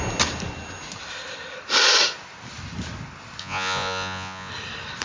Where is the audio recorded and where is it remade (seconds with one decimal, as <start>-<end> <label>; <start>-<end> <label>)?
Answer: 0.0-3.4 recorded; 3.4-4.5 remade; 4.5-5.0 recorded